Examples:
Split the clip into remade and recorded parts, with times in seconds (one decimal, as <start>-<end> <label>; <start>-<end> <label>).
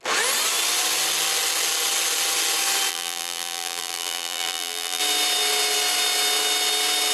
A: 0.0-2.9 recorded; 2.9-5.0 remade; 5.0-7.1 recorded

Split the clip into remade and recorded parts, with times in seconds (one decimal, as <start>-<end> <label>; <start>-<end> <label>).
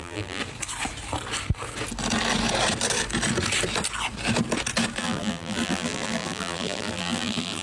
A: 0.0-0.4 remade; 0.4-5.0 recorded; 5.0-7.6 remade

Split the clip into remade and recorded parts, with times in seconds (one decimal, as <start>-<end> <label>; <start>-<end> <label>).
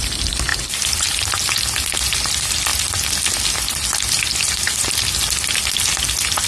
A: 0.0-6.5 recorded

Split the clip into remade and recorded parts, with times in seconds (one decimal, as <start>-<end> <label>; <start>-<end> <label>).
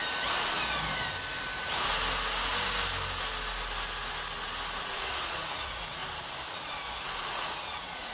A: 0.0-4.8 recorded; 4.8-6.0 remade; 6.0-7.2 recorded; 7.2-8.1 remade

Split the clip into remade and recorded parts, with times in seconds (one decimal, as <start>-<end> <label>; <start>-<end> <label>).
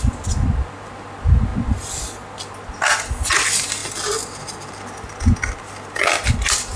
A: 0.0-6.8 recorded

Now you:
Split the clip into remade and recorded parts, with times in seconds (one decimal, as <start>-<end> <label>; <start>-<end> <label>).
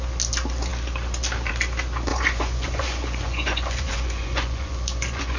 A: 0.0-2.1 recorded; 2.1-5.4 remade